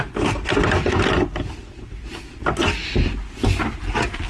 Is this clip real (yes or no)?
yes